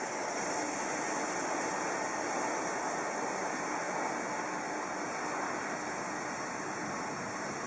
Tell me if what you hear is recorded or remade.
recorded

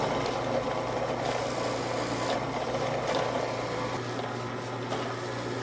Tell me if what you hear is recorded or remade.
recorded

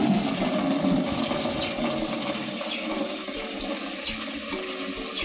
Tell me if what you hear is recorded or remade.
recorded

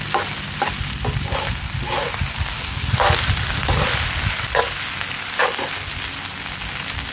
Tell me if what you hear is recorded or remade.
recorded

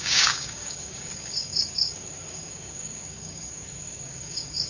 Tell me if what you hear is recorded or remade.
remade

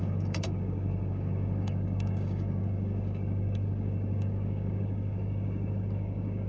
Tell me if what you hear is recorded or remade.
remade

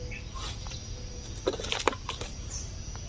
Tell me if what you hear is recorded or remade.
recorded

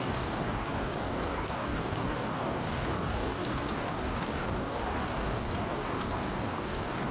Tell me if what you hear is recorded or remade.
remade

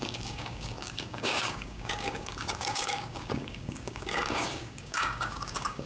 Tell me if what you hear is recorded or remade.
remade